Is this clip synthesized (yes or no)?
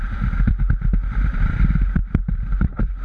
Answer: no